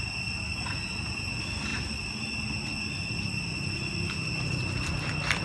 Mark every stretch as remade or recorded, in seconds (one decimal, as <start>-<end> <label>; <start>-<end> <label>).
0.0-5.4 recorded